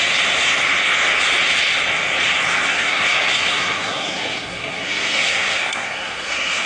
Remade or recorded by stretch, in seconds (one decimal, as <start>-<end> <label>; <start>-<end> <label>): 0.0-2.7 recorded; 2.7-6.7 remade